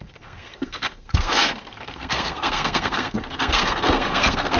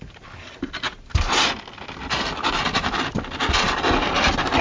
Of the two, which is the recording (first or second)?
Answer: second